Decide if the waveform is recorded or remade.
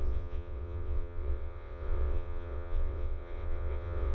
remade